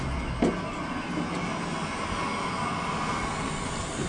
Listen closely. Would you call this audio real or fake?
real